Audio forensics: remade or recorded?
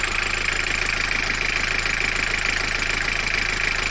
recorded